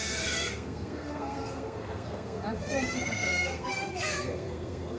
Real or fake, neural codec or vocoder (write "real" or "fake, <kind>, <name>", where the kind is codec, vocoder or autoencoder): fake, codec, SNAC